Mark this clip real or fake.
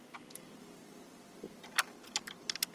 real